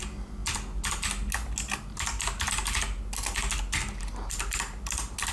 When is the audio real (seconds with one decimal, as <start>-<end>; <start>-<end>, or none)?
0.0-5.3